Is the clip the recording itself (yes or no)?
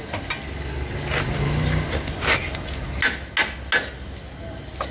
yes